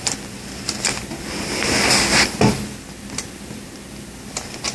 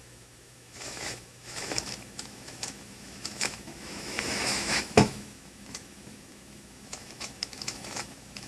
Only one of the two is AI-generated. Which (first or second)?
second